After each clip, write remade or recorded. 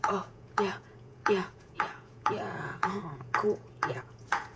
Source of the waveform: remade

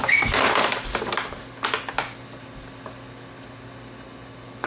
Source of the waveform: recorded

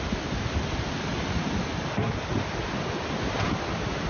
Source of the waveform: recorded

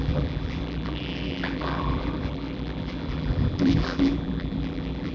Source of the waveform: remade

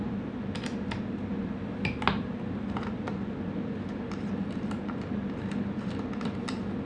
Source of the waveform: recorded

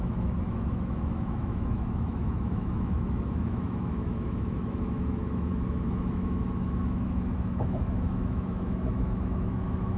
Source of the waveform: remade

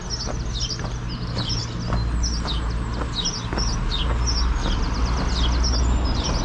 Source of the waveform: recorded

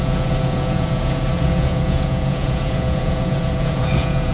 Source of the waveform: remade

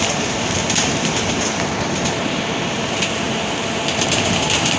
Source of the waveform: remade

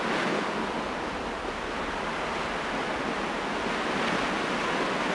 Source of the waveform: recorded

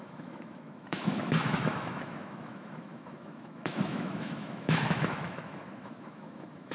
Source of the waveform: remade